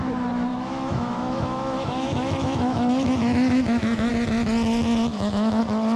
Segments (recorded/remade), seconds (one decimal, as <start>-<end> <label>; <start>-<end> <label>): 0.0-0.5 recorded; 0.5-4.1 remade; 4.1-5.1 recorded; 5.1-5.6 remade; 5.6-6.0 recorded